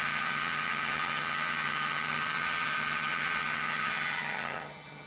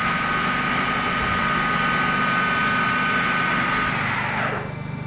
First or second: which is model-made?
first